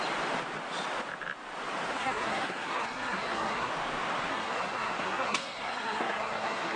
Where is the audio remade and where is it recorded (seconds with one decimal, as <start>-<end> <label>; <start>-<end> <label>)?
0.0-1.9 recorded; 1.9-3.7 remade; 3.7-4.3 recorded; 4.3-6.8 remade